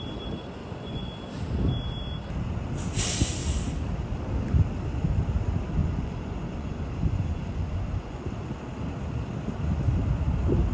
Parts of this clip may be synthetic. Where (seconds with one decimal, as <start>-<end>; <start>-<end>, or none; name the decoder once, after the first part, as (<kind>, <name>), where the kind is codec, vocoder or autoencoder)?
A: 0.6-1.1 (vocoder, Vocos); 5.8-8.5